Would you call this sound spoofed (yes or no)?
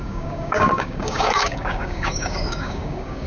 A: yes